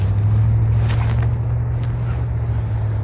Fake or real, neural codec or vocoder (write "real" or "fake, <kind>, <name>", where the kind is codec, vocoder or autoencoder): real